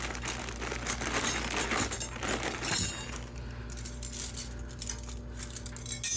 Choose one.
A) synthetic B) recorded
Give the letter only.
B